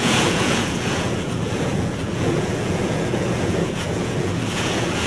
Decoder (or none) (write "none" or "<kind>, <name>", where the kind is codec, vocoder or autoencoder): vocoder, Vocos